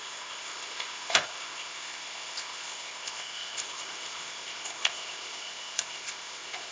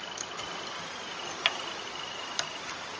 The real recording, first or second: second